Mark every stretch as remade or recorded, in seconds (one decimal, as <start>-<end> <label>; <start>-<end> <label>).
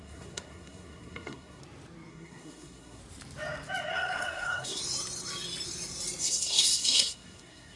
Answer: 0.0-1.6 remade; 1.6-2.1 recorded; 2.1-3.0 remade; 3.0-3.9 recorded; 3.9-4.8 remade; 4.8-6.2 recorded; 6.2-7.8 remade